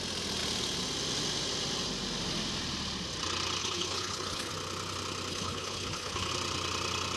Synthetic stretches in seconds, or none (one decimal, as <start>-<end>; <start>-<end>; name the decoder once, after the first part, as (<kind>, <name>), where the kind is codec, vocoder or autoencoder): 3.6-4.5 (codec, HILCodec); 5.3-6.3